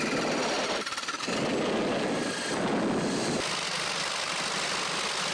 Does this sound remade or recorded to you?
recorded